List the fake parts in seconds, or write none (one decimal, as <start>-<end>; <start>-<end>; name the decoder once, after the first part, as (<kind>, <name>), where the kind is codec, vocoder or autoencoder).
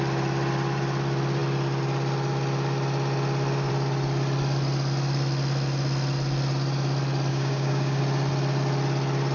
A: 7.3-8.0 (codec, DAC)